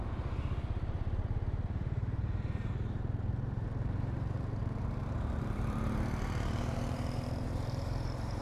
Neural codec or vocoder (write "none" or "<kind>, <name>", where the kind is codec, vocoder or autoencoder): vocoder, BigVGAN v2